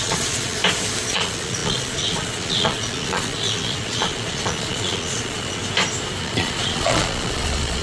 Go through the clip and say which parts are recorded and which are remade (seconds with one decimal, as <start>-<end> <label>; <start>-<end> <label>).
0.0-0.6 remade; 0.6-1.1 recorded; 1.1-5.6 remade; 5.6-6.2 recorded; 6.2-7.8 remade